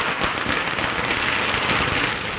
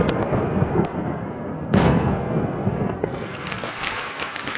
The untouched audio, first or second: first